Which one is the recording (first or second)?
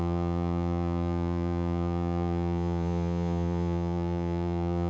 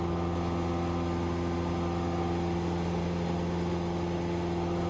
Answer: second